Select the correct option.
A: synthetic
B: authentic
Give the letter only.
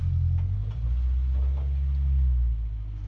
B